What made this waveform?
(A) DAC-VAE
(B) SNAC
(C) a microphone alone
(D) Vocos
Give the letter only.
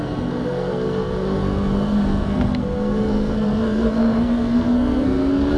B